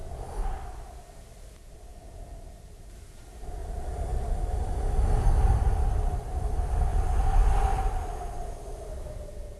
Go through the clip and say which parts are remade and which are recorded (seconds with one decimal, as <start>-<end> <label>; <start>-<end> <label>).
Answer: 0.0-3.6 recorded; 3.6-4.3 remade; 4.3-9.6 recorded